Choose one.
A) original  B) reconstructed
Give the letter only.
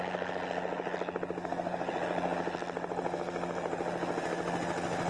A